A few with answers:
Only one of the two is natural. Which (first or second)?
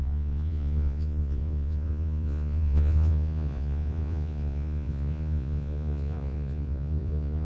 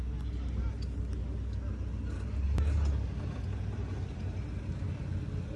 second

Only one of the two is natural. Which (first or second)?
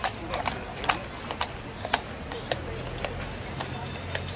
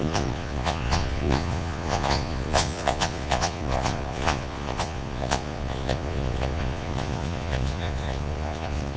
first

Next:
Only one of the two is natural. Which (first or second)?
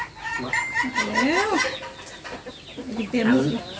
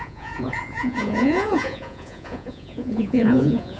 first